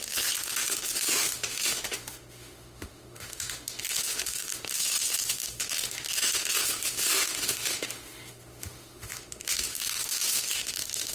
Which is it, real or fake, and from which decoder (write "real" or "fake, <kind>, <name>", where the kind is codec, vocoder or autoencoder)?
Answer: fake, autoencoder, DAC-VAE